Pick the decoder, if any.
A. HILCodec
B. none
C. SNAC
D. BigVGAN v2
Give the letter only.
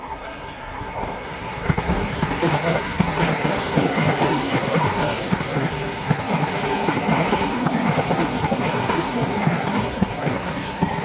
C